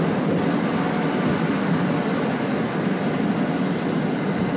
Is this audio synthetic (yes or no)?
no